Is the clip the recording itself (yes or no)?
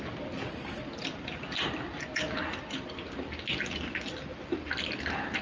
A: yes